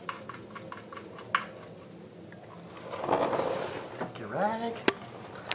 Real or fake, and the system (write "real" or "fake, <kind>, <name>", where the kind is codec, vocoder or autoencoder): real